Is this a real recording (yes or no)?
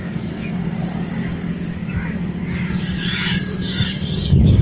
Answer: no